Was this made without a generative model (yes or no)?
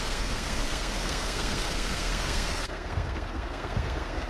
no